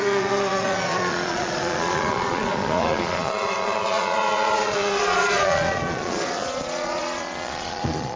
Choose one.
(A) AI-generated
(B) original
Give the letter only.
A